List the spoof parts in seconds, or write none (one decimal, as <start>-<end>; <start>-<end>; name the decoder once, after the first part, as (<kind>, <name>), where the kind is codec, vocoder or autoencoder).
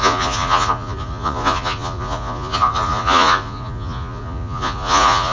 0.0-5.3 (vocoder, Vocos)